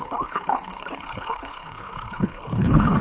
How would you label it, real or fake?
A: fake